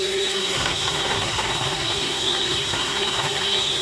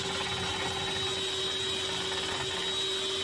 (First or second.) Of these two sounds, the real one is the second